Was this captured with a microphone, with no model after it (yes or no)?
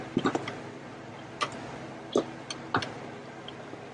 yes